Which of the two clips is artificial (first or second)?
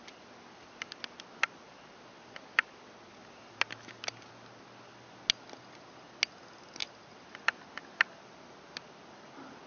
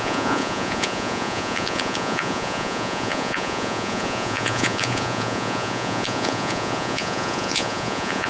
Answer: second